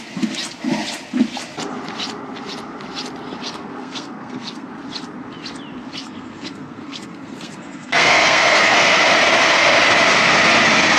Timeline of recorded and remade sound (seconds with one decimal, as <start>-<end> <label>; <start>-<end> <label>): 0.0-3.4 recorded; 3.4-4.7 remade; 4.7-6.0 recorded; 6.0-9.0 remade; 9.0-11.0 recorded